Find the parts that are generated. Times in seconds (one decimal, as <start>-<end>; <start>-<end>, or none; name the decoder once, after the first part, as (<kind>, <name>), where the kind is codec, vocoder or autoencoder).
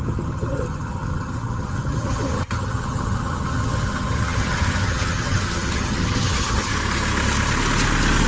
0.0-6.7 (vocoder, HiFi-GAN)